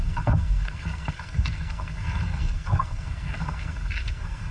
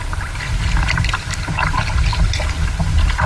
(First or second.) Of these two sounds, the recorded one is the second